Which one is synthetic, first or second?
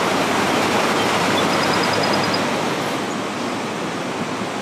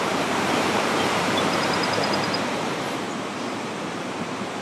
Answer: second